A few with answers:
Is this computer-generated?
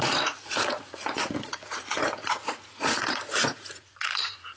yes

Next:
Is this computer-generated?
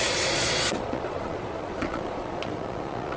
yes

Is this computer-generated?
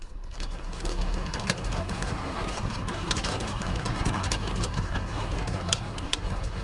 yes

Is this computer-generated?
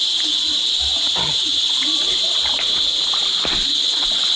no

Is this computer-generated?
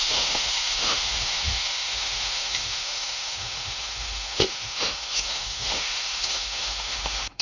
yes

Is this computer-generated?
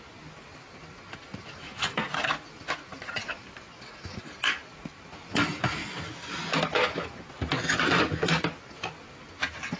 no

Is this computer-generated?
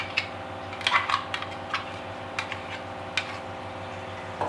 no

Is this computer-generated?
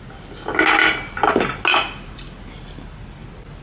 no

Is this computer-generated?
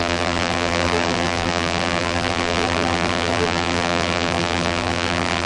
yes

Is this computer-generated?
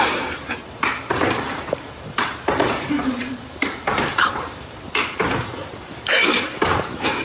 yes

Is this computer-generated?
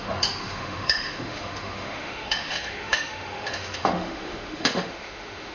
yes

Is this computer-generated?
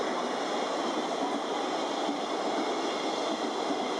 no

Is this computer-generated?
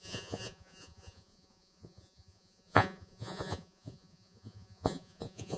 yes